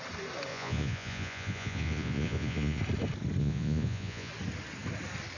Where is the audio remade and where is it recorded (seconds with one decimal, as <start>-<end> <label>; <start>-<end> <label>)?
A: 0.0-0.5 recorded; 0.5-2.8 remade; 2.8-3.4 recorded; 3.4-4.3 remade; 4.3-5.4 recorded